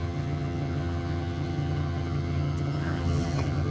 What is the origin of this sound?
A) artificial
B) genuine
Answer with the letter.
A